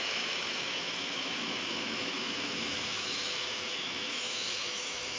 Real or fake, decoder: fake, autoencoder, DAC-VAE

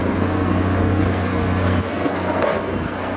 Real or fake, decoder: fake, codec, SNAC